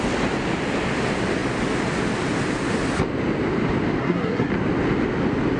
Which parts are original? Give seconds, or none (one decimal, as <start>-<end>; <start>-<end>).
0.0-4.0; 4.5-5.6